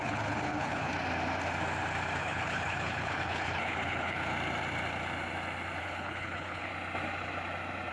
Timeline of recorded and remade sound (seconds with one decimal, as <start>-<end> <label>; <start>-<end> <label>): 0.0-0.9 remade; 0.9-2.2 recorded; 2.2-4.3 remade; 4.3-5.8 recorded; 5.8-6.7 remade; 6.7-7.9 recorded